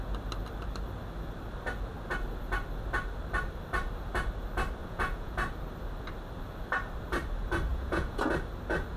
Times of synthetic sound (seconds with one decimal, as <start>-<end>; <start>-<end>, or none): 4.8-5.3; 7.7-8.3